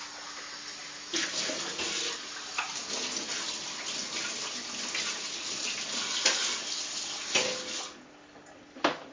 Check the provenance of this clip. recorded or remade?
recorded